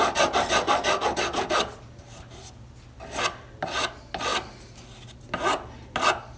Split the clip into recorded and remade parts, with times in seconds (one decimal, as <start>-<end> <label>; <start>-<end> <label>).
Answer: 0.0-6.4 recorded